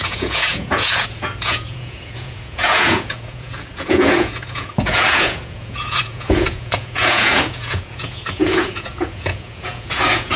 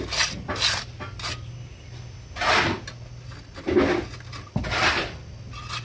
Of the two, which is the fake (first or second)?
first